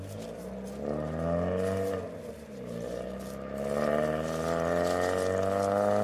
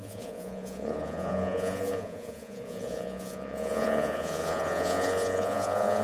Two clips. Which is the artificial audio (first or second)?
second